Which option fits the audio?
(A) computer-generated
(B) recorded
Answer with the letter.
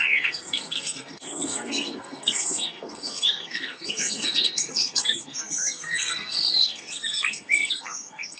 A